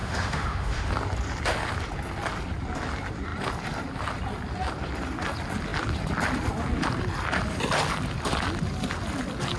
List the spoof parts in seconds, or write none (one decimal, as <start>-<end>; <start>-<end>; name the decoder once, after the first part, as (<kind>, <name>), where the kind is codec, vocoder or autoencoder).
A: 0.0-0.9 (autoencoder, DAC-VAE)